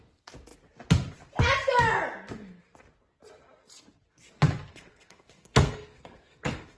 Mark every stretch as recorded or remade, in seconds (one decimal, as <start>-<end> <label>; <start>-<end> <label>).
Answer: 0.0-4.7 recorded; 4.7-6.8 remade

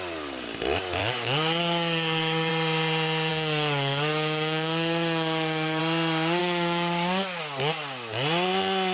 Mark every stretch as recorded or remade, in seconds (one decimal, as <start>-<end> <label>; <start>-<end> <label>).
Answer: 0.0-1.0 recorded; 1.0-2.5 remade; 2.5-3.3 recorded; 3.3-5.8 remade; 5.8-6.4 recorded; 6.4-7.4 remade; 7.4-8.9 recorded

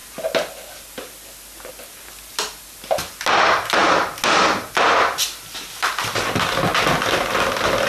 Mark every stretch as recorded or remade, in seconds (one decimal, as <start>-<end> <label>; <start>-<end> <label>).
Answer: 0.0-7.9 recorded

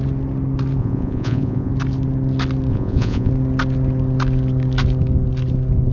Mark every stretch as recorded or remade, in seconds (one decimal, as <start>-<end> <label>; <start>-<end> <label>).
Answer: 0.0-0.8 recorded; 0.8-1.7 remade; 1.7-2.7 recorded; 2.7-3.3 remade; 3.3-5.9 recorded

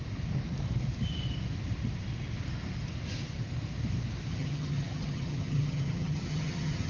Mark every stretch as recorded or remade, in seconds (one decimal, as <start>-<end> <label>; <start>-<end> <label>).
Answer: 0.0-4.3 recorded; 4.3-6.9 remade

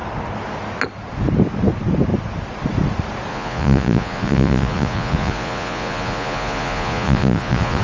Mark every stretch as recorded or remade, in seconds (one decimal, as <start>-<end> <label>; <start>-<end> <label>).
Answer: 0.0-3.3 recorded; 3.3-7.8 remade